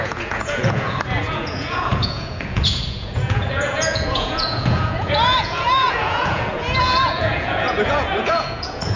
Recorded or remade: remade